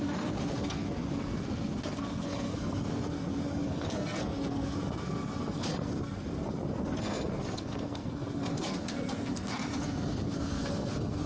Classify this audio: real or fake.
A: fake